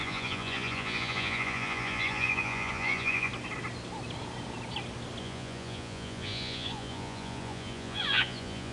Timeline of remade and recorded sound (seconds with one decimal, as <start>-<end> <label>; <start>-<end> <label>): 0.0-3.3 remade; 3.3-5.2 recorded; 5.2-8.7 remade